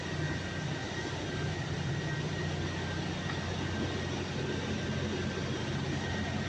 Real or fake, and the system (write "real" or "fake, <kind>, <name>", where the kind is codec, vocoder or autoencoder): real